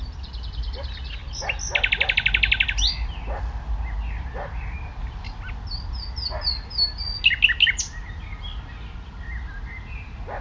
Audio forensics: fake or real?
real